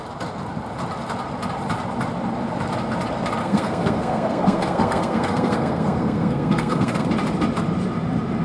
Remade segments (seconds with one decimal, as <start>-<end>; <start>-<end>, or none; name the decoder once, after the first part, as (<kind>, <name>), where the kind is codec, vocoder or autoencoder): 3.4-7.1 (codec, SNAC)